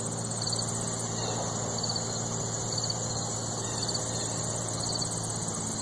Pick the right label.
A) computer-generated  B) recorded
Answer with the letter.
B